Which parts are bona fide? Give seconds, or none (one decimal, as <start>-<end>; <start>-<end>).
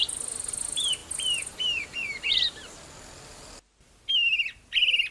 0.0-5.1